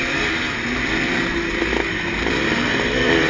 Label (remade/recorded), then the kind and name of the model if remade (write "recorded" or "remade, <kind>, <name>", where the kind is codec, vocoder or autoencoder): recorded